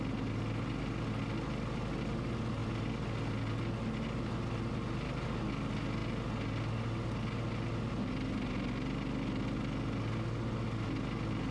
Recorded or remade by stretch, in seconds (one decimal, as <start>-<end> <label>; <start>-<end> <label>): 0.0-11.5 recorded